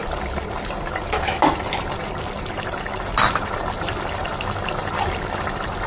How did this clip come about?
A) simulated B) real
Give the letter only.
B